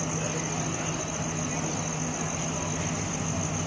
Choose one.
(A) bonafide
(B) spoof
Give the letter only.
A